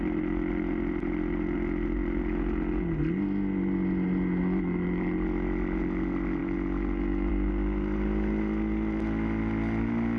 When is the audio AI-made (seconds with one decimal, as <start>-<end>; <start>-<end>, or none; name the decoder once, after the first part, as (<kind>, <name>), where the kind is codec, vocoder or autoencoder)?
none